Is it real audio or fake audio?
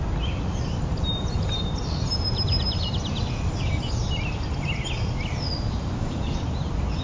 real